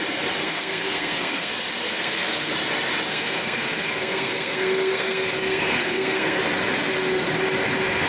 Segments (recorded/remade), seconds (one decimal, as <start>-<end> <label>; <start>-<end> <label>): 0.0-0.4 recorded; 0.4-1.5 remade; 1.5-1.9 recorded; 1.9-2.5 remade; 2.5-3.1 recorded; 3.1-6.4 remade; 6.4-8.1 recorded